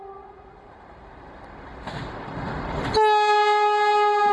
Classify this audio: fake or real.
real